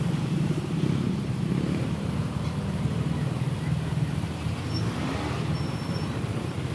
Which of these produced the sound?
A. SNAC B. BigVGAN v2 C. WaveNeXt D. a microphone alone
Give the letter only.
B